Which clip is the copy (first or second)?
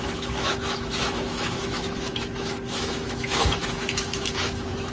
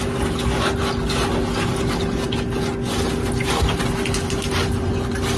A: first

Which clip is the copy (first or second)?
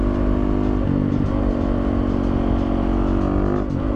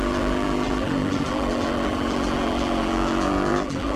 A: second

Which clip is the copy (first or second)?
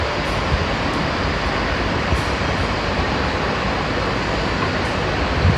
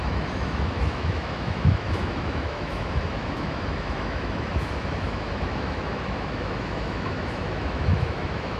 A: second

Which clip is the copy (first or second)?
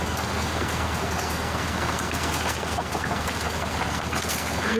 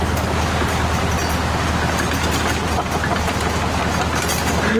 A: first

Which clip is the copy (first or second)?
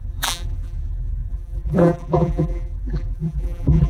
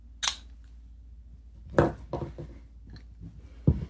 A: first